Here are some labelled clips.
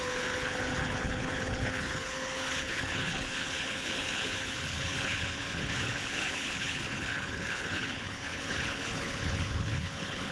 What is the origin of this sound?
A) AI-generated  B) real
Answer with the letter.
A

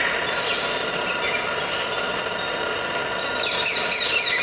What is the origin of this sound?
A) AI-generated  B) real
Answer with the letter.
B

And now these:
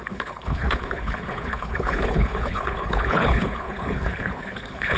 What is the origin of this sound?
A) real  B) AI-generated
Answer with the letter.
B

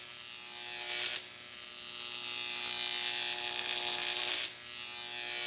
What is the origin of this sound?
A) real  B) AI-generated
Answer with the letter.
A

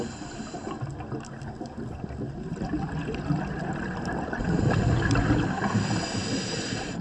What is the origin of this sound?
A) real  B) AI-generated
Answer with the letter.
A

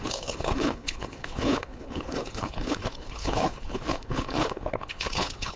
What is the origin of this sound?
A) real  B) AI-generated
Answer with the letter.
B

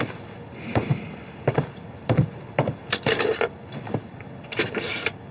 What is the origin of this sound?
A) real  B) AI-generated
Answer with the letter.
A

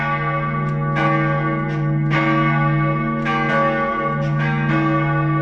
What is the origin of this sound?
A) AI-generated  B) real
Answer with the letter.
B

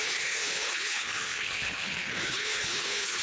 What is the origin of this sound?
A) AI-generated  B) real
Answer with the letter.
A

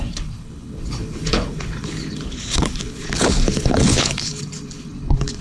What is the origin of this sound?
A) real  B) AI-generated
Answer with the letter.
B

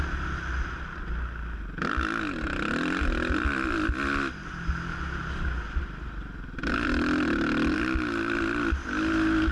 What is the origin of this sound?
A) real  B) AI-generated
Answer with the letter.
A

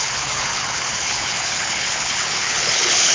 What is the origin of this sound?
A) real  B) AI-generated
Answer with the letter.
B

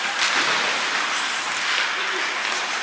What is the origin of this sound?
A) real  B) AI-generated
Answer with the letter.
A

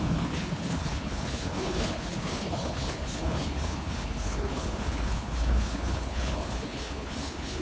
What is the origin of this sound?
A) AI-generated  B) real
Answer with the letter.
A